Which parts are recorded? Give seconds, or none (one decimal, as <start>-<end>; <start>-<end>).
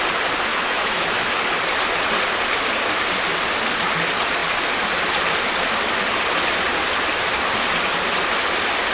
0.0-0.5; 1.3-8.9